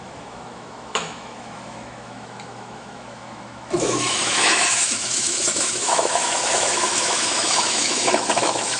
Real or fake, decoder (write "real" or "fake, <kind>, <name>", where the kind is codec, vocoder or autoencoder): fake, autoencoder, DAC-VAE